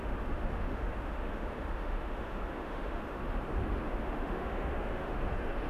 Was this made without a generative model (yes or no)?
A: no